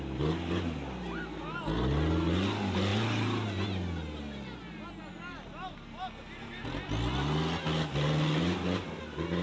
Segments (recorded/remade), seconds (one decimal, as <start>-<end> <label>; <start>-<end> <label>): 0.0-9.4 recorded